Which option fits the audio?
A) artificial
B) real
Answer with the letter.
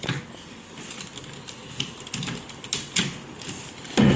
B